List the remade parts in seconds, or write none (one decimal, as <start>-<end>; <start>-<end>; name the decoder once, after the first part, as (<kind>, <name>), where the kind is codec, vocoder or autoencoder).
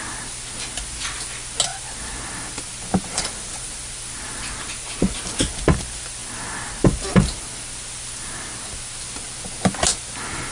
3.1-3.7 (vocoder, BigVGAN v2)